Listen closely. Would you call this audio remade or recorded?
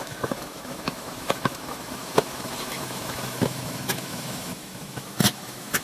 remade